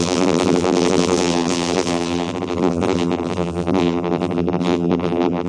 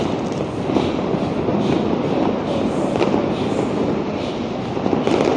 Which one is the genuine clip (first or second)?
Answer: second